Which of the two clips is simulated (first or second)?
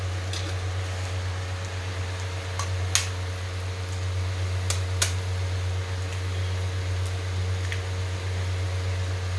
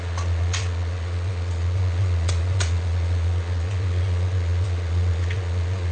second